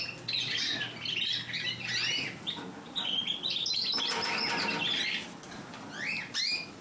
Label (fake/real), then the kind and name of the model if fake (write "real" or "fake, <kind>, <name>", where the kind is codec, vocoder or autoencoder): real